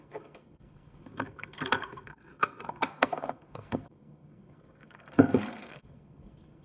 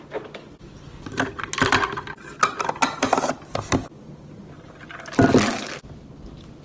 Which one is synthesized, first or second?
first